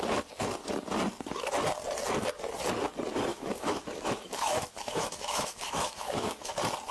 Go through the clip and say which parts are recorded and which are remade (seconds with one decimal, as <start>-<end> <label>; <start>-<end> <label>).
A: 0.0-3.3 recorded; 3.3-6.5 remade; 6.5-6.9 recorded